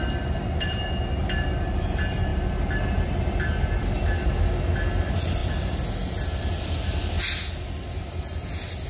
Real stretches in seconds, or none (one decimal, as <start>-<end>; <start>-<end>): 0.0-8.9